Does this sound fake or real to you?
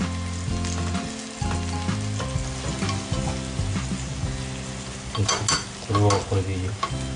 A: real